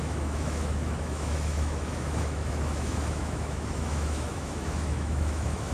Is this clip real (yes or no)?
no